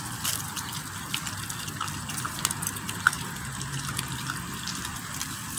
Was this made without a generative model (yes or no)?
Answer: yes